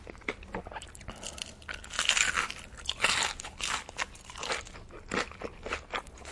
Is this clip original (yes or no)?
yes